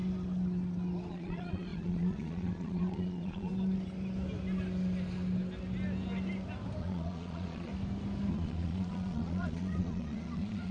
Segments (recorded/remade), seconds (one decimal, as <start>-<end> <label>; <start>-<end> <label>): 0.0-1.1 recorded; 1.1-3.5 remade; 3.5-6.8 recorded; 6.8-7.7 remade; 7.7-8.3 recorded; 8.3-10.7 remade